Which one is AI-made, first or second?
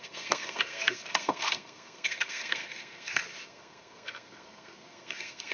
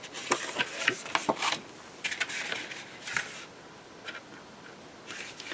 first